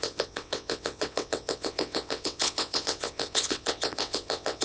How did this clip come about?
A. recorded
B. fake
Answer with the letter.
B